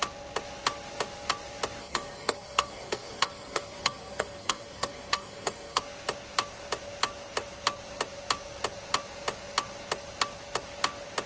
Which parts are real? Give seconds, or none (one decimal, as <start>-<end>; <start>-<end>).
0.0-1.8; 5.8-11.3